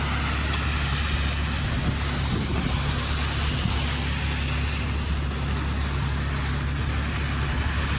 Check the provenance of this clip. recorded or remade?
recorded